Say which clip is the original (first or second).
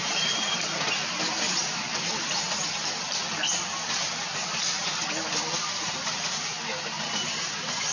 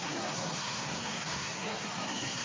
first